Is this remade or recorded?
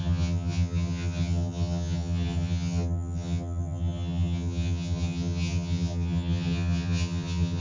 remade